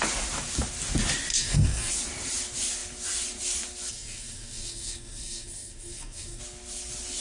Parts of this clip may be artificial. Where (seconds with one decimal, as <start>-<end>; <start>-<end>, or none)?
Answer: 1.3-1.9; 3.9-6.4